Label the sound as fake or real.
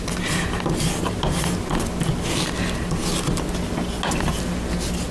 real